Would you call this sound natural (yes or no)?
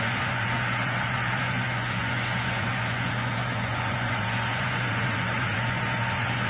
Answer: no